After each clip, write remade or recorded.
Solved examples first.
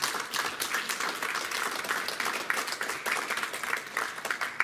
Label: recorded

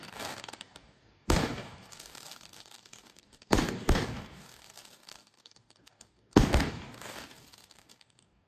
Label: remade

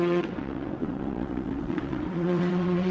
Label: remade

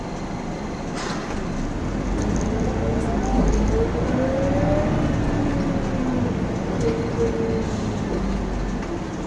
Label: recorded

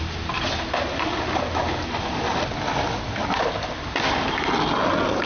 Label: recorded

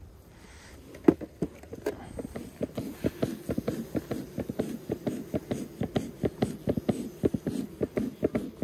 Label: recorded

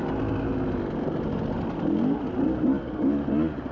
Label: recorded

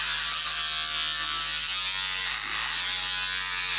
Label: recorded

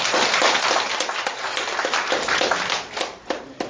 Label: recorded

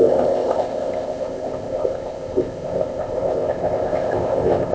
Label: remade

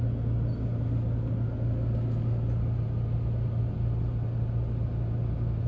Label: recorded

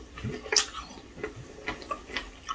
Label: recorded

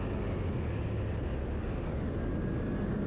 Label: recorded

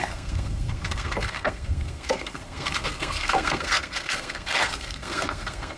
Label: remade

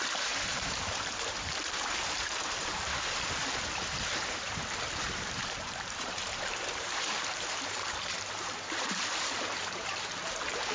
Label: remade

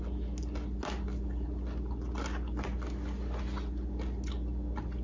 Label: recorded